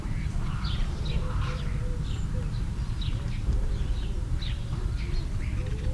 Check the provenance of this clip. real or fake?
fake